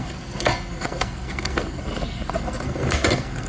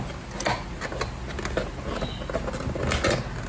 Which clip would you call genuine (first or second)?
second